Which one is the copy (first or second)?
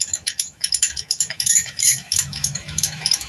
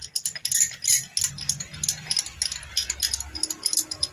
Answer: first